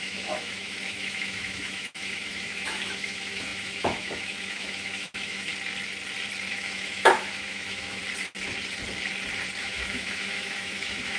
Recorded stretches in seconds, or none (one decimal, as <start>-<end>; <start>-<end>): 5.5-6.5; 8.0-9.6